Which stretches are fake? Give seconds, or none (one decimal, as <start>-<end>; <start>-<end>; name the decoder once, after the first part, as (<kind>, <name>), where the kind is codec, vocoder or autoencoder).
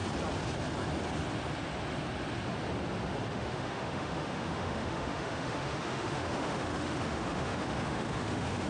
3.3-8.7 (autoencoder, DAC-VAE)